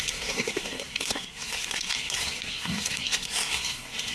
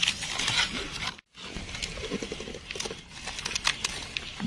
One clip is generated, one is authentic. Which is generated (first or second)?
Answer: first